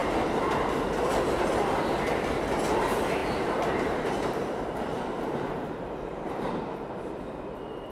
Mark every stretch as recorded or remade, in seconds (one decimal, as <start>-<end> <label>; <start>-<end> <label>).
0.0-3.2 recorded; 3.2-7.1 remade; 7.1-7.9 recorded